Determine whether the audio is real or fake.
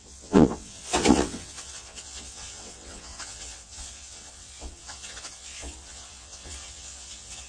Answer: fake